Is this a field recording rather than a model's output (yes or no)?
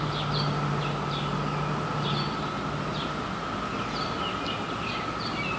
yes